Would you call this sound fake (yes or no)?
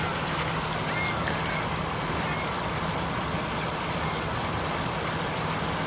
no